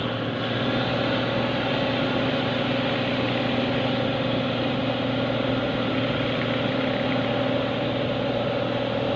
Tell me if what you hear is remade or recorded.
recorded